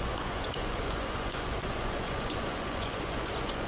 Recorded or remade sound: remade